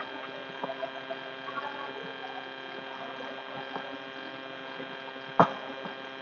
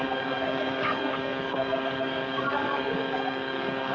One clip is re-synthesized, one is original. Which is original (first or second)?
first